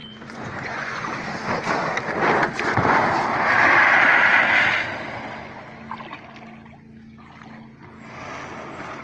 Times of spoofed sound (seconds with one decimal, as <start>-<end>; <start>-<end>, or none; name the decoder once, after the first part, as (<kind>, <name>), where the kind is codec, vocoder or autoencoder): 0.0-1.1 (vocoder, Vocos); 2.4-3.0